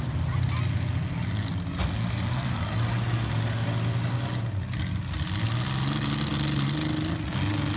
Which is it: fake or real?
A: real